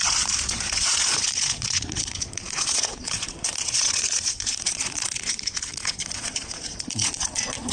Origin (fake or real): fake